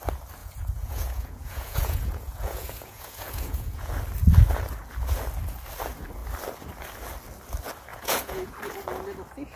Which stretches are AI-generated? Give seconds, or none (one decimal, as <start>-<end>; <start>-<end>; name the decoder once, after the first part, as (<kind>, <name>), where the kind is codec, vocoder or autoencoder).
0.4-3.9 (vocoder, Vocos); 7.9-8.5